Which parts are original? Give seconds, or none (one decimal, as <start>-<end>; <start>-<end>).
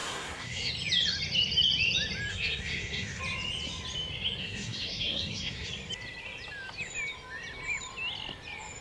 0.7-2.3; 3.2-4.4; 5.7-8.8